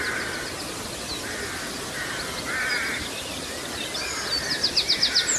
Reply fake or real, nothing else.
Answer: real